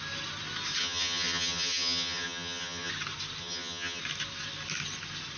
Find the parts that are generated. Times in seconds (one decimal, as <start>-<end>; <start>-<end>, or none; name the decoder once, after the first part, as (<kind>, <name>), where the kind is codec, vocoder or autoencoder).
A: 0.8-2.9 (vocoder, HiFi-GAN); 3.4-4.0